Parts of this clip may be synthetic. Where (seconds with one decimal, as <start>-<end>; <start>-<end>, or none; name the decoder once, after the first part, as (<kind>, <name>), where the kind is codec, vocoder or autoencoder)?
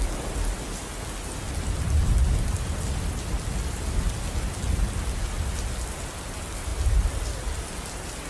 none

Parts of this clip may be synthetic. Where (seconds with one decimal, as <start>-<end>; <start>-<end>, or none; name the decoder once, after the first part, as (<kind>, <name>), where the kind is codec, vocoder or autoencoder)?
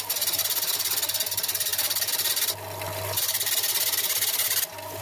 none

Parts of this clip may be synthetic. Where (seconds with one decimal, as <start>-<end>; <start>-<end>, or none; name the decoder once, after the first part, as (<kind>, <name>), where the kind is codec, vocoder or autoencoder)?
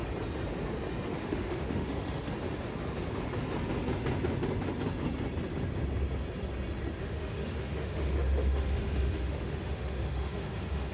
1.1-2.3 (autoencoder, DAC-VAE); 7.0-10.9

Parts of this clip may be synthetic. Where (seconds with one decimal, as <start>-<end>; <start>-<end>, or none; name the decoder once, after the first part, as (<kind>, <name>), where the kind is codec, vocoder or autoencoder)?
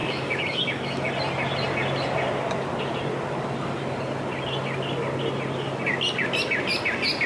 0.0-1.1 (autoencoder, DAC-VAE)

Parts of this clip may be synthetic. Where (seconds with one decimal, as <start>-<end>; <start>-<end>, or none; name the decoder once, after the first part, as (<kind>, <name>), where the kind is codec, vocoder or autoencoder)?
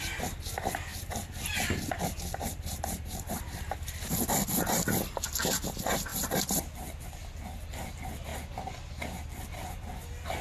none